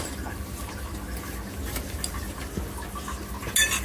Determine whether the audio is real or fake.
real